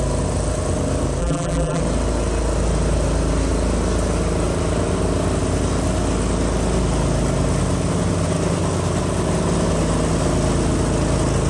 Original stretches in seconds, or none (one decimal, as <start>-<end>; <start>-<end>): 0.0-1.2; 1.8-11.5